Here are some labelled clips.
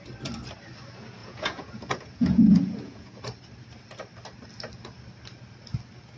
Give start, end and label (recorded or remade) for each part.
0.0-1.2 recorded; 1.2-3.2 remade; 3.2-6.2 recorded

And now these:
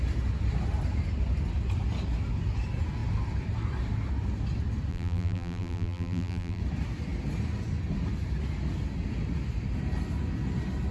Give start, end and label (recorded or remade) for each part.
0.0-4.9 recorded; 4.9-6.6 remade; 6.6-10.9 recorded

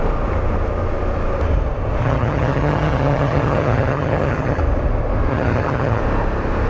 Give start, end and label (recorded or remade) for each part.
0.0-2.0 recorded; 2.0-4.6 remade; 4.6-5.3 recorded; 5.3-6.0 remade; 6.0-6.7 recorded

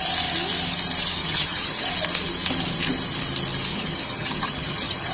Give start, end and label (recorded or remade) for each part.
0.0-1.2 recorded; 1.2-1.9 remade; 1.9-3.7 recorded; 3.7-5.1 remade

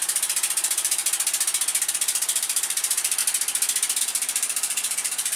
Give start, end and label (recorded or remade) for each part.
0.0-1.0 remade; 1.0-1.9 recorded; 1.9-3.2 remade; 3.2-4.0 recorded; 4.0-5.4 remade